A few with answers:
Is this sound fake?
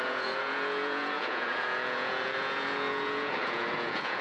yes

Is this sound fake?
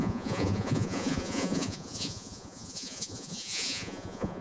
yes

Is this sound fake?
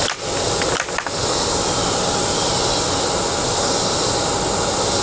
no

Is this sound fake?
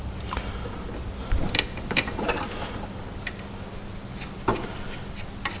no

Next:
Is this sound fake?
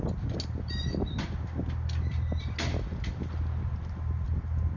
no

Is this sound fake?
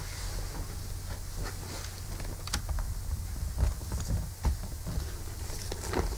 no